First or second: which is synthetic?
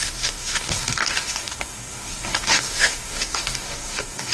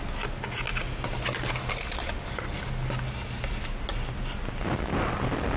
first